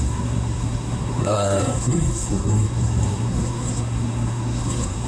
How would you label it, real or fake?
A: fake